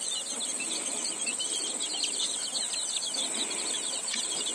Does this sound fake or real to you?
real